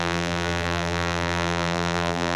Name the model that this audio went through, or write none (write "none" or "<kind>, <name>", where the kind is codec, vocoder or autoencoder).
vocoder, BigVGAN v2